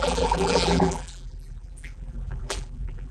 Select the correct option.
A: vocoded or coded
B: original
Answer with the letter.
A